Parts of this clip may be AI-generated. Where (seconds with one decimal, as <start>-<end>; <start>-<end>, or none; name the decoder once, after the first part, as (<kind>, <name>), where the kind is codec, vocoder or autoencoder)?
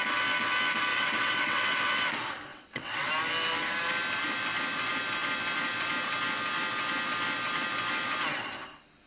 0.9-1.8 (vocoder, WaveNeXt); 2.5-3.1